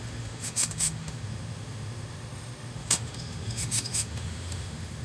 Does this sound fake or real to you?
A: fake